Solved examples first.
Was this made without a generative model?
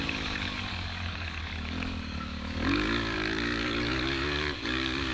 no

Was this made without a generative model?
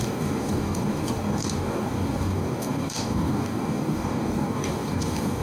no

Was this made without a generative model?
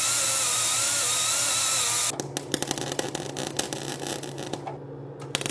yes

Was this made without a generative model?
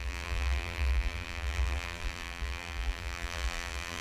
no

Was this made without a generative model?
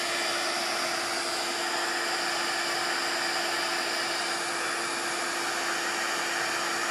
yes